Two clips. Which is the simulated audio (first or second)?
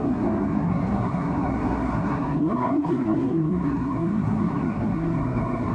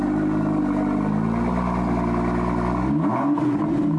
first